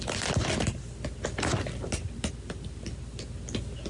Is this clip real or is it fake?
real